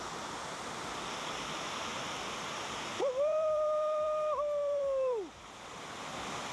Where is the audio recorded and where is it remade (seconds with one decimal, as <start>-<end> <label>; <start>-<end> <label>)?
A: 0.0-1.9 recorded; 1.9-5.8 remade; 5.8-6.5 recorded